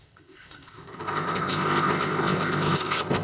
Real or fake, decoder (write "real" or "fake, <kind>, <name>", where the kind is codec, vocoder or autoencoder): fake, codec, ZipCodec